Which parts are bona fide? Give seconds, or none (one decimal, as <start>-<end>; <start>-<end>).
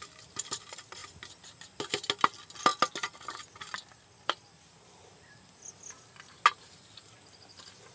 0.0-7.9